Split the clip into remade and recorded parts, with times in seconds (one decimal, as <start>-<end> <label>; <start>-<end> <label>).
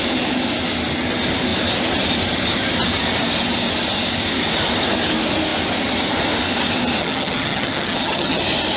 0.0-7.0 recorded; 7.0-8.4 remade; 8.4-8.8 recorded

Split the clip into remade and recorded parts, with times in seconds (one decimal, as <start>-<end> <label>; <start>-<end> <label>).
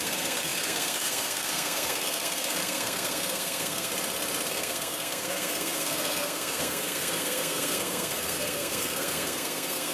0.0-3.9 remade; 3.9-4.5 recorded; 4.5-9.9 remade